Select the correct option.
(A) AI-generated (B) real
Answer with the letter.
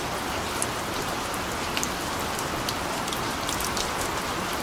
B